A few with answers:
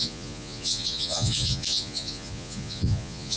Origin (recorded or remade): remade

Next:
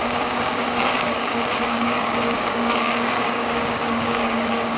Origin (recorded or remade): remade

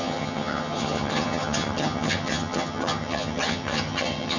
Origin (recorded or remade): remade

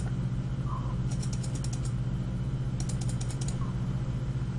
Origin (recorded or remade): recorded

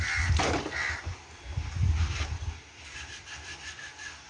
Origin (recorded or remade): recorded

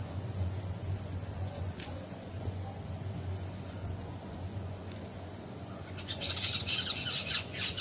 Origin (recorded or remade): remade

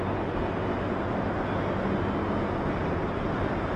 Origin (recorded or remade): recorded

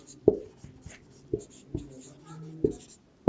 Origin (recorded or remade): recorded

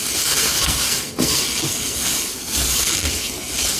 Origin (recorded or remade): remade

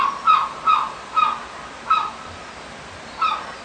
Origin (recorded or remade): recorded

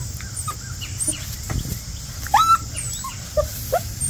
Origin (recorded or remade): recorded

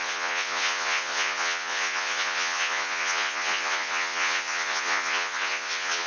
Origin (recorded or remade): remade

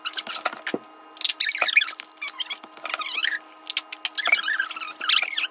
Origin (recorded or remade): recorded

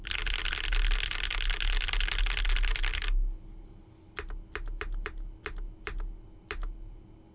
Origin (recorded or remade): recorded